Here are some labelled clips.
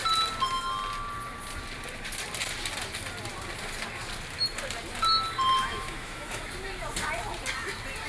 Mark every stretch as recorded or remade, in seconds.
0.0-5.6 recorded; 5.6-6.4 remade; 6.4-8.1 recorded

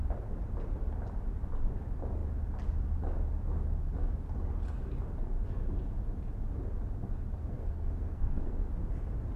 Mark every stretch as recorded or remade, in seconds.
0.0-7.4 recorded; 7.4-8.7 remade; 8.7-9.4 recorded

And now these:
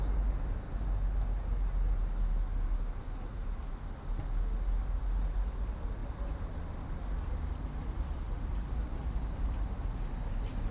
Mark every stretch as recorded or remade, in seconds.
0.0-10.7 recorded

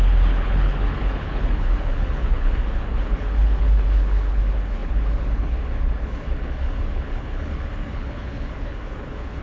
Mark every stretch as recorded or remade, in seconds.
0.0-9.4 remade

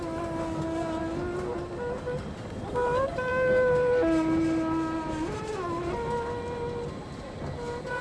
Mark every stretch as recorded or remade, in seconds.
0.0-8.0 recorded